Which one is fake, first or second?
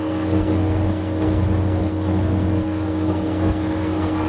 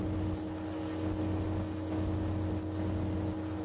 first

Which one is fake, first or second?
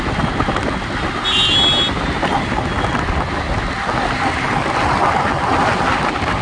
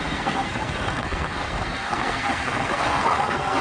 second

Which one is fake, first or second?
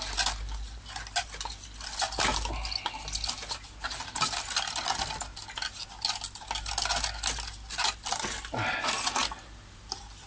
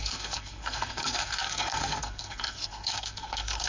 second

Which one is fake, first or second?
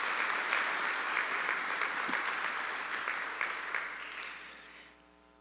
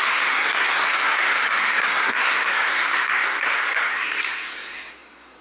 second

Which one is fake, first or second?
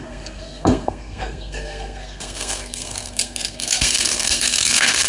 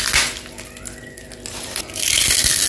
first